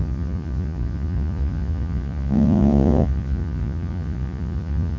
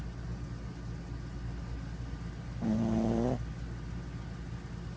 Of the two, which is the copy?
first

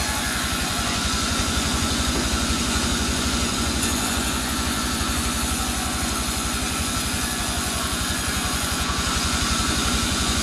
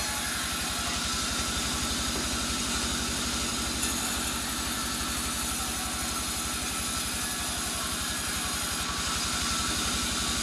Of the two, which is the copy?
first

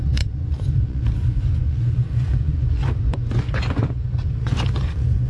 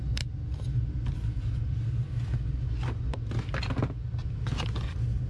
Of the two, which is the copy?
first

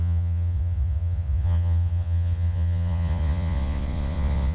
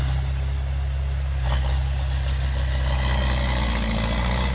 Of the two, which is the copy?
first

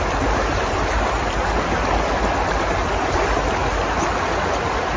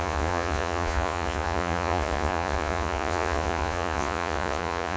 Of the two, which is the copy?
second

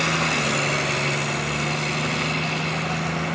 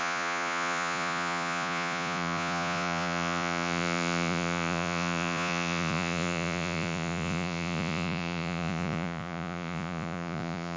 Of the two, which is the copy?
second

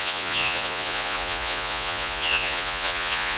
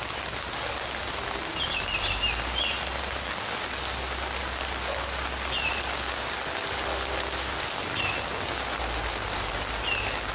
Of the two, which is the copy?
first